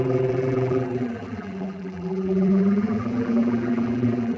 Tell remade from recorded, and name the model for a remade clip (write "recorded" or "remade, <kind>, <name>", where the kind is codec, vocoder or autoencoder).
remade, vocoder, BigVGAN v2